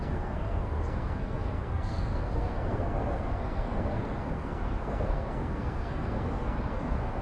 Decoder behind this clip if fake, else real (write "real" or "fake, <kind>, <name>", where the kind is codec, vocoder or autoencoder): fake, codec, SNAC